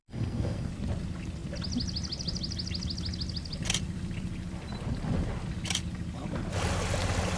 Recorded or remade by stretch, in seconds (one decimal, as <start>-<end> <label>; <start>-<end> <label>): 0.0-0.7 remade; 0.7-7.4 recorded